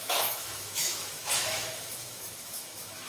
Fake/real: fake